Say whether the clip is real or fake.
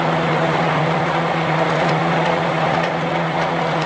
fake